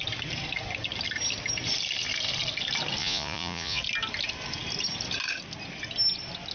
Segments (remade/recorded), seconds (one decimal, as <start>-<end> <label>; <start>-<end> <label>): 0.0-3.0 recorded; 3.0-3.8 remade; 3.8-6.5 recorded